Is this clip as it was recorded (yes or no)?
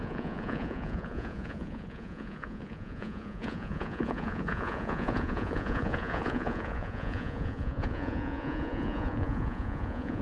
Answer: no